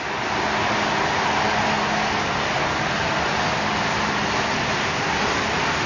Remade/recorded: recorded